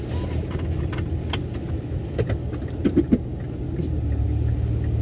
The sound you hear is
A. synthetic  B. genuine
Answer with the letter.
B